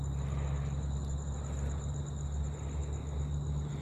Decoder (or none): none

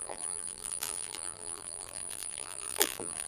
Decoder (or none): vocoder, BigVGAN v2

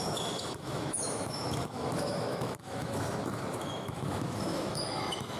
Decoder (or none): autoencoder, DAC-VAE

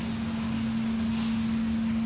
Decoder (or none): none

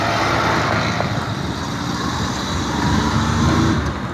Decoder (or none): none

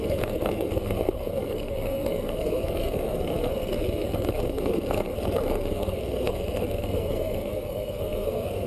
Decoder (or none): codec, SNAC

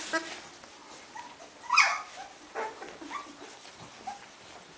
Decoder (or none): none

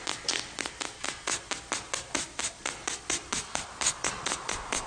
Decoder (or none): none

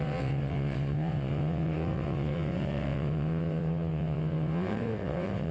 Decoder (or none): vocoder, WaveNeXt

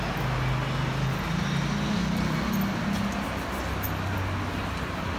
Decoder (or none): none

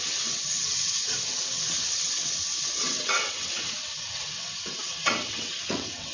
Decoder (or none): vocoder, WaveNeXt